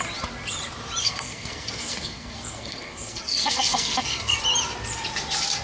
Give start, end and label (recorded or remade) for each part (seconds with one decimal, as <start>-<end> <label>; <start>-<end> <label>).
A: 0.0-1.0 recorded; 1.0-4.4 remade; 4.4-5.6 recorded